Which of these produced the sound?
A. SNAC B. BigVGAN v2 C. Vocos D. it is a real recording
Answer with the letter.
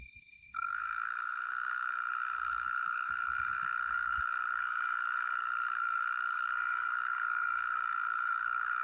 A